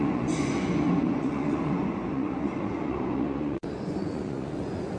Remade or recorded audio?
remade